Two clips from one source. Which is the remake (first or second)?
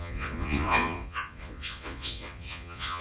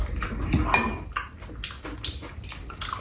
first